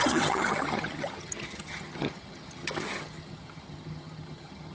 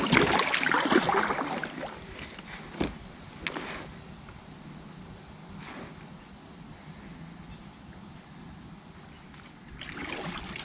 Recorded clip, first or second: second